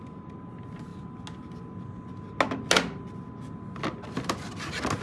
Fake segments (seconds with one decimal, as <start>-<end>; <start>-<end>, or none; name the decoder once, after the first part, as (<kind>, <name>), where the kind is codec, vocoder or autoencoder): none